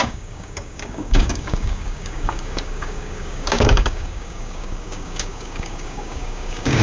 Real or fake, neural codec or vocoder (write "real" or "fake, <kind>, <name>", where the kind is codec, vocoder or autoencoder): fake, codec, DAC